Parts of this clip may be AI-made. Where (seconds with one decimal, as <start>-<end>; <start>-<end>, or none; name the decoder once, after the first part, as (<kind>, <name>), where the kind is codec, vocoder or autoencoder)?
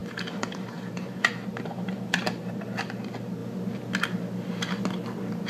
0.0-2.5 (vocoder, BigVGAN v2)